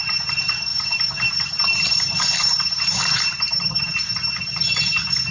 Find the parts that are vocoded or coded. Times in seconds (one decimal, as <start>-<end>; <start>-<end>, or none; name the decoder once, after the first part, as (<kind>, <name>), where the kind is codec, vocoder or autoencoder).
0.7-3.8 (vocoder, BigVGAN v2)